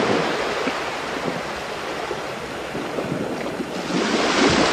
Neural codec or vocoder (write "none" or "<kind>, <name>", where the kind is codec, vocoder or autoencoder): none